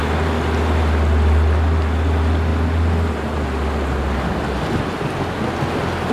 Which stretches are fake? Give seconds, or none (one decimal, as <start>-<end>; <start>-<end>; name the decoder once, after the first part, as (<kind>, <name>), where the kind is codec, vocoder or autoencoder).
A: none